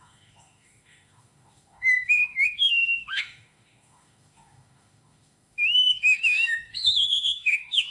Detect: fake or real fake